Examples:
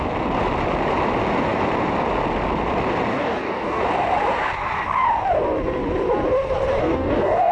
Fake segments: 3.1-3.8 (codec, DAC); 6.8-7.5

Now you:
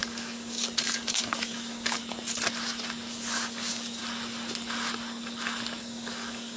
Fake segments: 0.0-2.0 (codec, DAC); 3.1-4.0; 5.8-6.6